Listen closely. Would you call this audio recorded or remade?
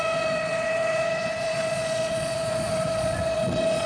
remade